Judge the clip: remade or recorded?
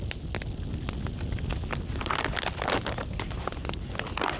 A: recorded